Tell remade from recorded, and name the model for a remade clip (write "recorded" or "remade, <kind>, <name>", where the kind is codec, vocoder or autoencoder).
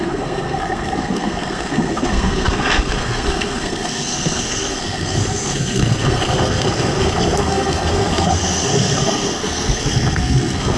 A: remade, codec, SNAC